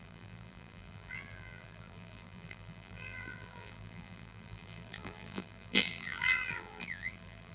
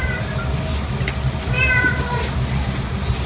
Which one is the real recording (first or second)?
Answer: second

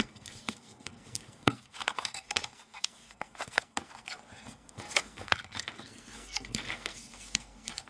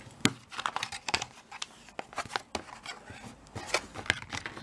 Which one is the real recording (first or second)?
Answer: second